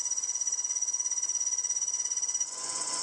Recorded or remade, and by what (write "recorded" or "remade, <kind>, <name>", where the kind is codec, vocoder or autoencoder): remade, vocoder, Vocos